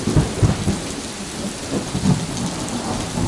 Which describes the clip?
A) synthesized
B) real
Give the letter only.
B